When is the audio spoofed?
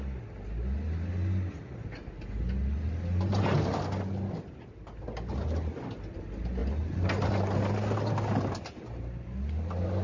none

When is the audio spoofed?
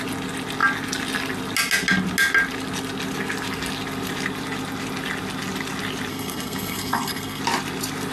6.1-7.4 (codec, SNAC)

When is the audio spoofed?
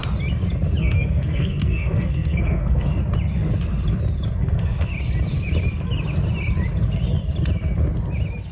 0.8-3.0 (codec, SNAC); 4.4-4.9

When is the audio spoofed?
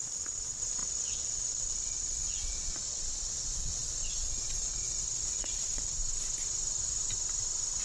0.0-6.0 (vocoder, Vocos)